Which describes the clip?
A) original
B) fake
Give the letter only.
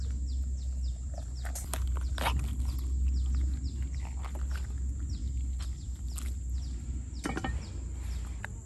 A